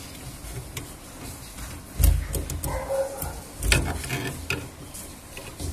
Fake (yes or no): no